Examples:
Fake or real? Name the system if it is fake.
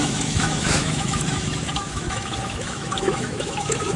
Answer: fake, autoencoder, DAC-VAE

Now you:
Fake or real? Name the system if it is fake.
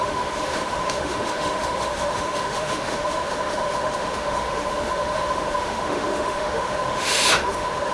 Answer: fake, autoencoder, DAC-VAE